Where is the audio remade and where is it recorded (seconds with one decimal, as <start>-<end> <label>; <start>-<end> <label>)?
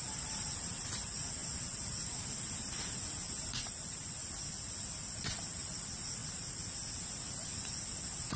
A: 0.0-8.4 remade